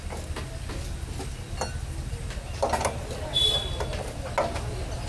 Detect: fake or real real